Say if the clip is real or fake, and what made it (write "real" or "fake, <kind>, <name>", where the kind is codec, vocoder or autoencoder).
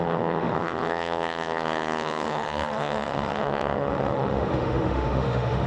fake, autoencoder, DAC-VAE